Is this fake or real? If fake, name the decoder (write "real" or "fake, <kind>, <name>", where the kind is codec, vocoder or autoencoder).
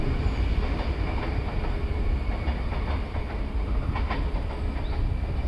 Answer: real